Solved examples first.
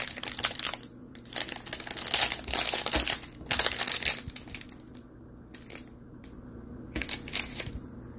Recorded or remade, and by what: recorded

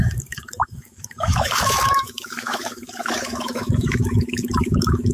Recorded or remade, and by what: remade, autoencoder, DAC-VAE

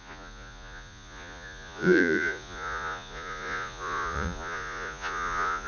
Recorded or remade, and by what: remade, vocoder, Vocos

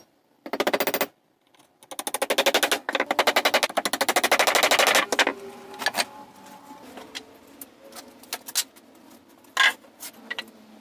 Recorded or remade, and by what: recorded